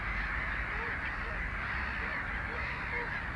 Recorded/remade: recorded